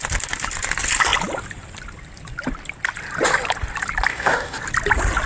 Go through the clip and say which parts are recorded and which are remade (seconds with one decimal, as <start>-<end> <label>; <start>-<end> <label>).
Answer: 0.0-4.1 recorded; 4.1-4.6 remade; 4.6-5.3 recorded